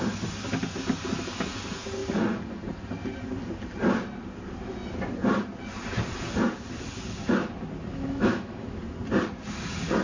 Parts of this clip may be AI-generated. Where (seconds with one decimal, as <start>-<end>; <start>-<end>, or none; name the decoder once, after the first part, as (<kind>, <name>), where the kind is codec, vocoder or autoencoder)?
7.9-8.8 (autoencoder, DAC-VAE)